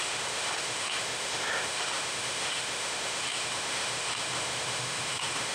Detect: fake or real fake